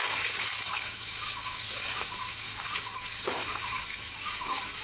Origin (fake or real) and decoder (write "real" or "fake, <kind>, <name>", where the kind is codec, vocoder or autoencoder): fake, codec, DAC